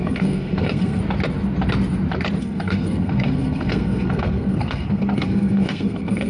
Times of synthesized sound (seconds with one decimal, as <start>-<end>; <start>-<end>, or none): 0.0-1.0; 2.4-6.3